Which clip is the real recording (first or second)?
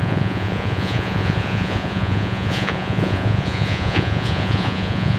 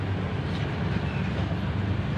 second